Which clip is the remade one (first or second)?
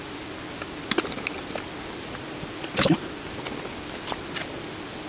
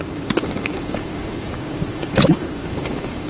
second